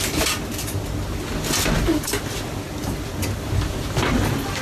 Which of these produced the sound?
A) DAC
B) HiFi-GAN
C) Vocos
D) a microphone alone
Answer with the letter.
D